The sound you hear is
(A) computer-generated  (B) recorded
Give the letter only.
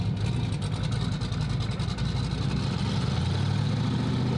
B